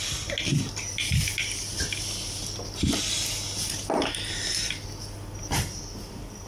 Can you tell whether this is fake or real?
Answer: real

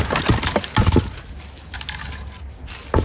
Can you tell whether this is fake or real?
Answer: real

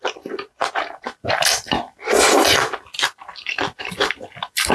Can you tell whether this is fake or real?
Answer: real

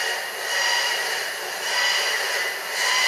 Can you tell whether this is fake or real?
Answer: real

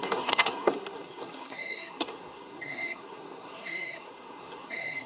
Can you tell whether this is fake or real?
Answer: fake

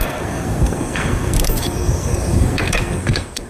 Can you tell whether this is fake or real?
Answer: fake